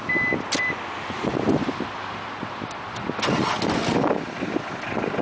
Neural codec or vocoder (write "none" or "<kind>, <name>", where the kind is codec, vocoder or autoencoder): none